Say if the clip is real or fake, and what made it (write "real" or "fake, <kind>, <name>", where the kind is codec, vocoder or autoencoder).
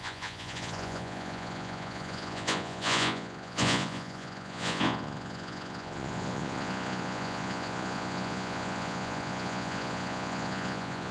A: fake, vocoder, Vocos